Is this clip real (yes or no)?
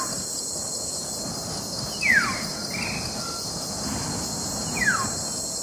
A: yes